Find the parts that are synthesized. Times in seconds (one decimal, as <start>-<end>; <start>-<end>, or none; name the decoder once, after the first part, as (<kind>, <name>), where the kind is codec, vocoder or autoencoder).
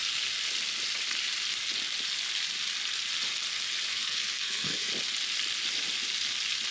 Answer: 3.9-4.9 (codec, SNAC)